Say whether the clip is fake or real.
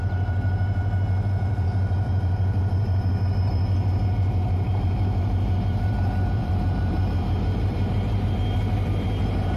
fake